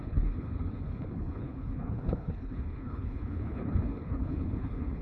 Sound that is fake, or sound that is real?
fake